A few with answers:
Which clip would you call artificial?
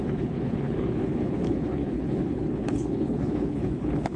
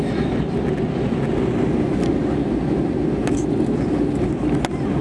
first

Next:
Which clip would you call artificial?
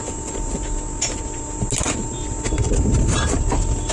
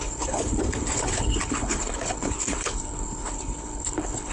second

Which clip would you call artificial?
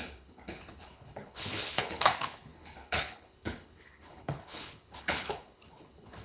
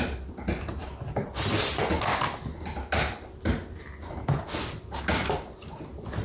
first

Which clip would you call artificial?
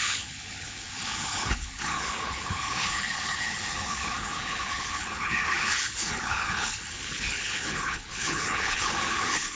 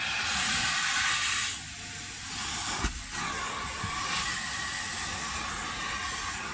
first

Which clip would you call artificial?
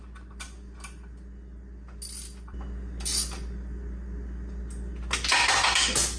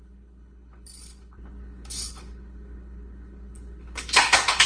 second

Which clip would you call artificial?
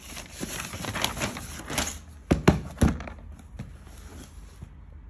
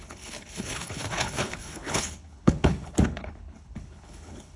second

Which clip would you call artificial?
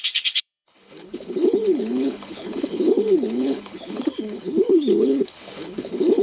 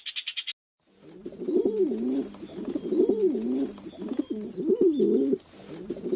first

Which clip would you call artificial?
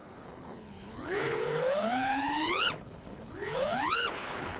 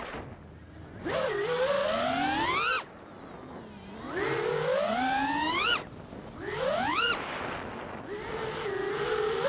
first